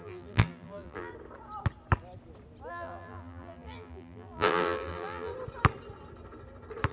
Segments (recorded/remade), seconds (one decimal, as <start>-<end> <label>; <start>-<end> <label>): 0.0-1.1 remade; 1.1-2.7 recorded; 2.7-5.3 remade; 5.3-6.9 recorded